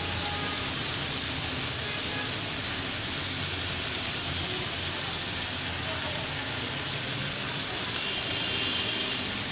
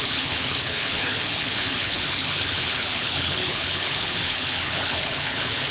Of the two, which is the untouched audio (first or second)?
first